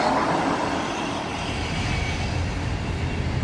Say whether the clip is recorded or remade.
recorded